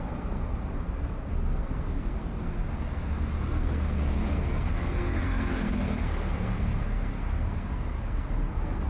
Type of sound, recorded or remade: remade